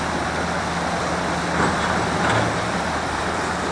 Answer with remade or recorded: recorded